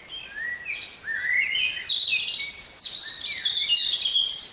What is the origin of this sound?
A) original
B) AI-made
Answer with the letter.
A